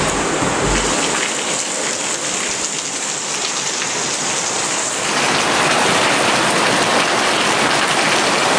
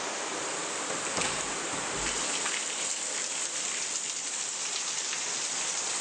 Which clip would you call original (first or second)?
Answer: first